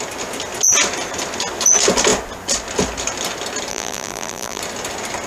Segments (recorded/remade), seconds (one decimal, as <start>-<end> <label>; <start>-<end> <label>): 0.0-3.7 recorded; 3.7-4.6 remade; 4.6-5.3 recorded